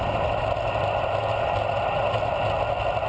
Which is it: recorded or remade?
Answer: recorded